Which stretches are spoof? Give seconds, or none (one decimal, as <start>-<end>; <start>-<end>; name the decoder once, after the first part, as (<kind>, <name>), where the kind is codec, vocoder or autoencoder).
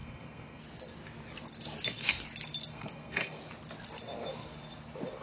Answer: 0.0-0.6 (codec, SNAC); 2.7-3.4